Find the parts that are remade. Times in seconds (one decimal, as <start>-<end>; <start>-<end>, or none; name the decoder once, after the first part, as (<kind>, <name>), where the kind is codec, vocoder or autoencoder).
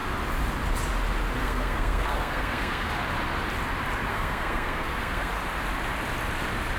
1.4-2.9 (codec, SNAC); 4.1-5.3